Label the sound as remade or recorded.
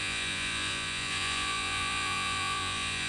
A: remade